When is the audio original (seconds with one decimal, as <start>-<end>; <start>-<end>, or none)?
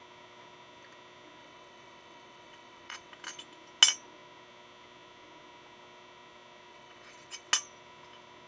0.0-1.4; 3.1-6.7; 7.5-8.5